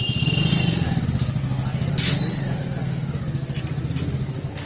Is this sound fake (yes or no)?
no